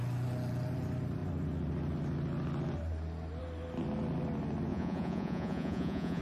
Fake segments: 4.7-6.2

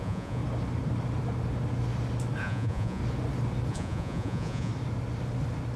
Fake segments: 0.0-0.4; 2.4-3.0; 3.7-4.7

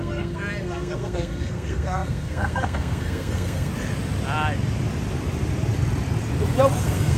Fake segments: 0.0-3.7; 6.8-7.2

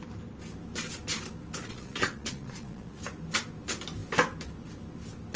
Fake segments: 1.6-3.0

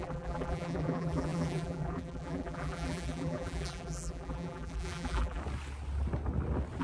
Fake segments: 0.0-5.4

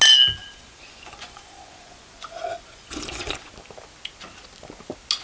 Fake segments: 0.4-3.5

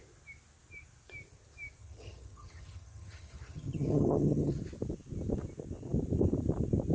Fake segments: 1.8-4.6

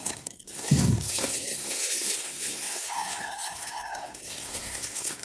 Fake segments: 0.0-5.2